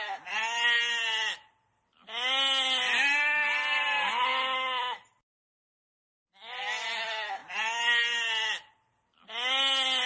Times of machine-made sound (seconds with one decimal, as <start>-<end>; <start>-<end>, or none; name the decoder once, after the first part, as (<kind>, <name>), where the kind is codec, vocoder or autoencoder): none